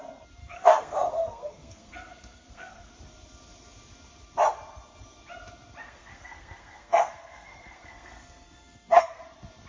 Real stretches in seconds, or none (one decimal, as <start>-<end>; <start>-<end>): 0.0-0.4; 2.9-5.8; 9.2-9.7